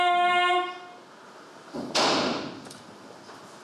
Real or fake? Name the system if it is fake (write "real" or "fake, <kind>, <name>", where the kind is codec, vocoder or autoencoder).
real